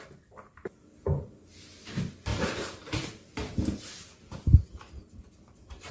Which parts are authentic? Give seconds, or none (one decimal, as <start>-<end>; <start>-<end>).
0.0-5.9